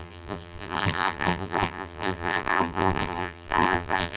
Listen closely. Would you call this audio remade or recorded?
remade